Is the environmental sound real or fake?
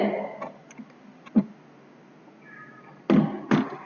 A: real